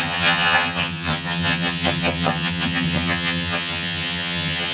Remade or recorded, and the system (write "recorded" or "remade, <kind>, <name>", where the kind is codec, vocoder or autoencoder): remade, vocoder, HiFi-GAN